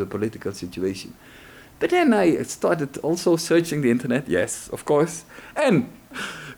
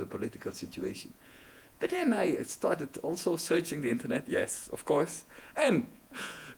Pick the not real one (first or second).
second